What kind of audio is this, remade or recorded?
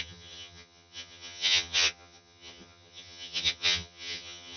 remade